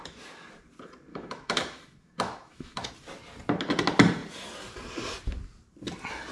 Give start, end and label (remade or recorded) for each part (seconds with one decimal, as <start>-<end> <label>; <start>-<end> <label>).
0.0-1.1 recorded; 1.1-2.9 remade; 2.9-6.3 recorded